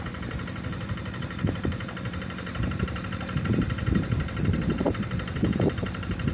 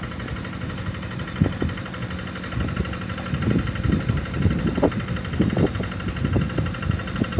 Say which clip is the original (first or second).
second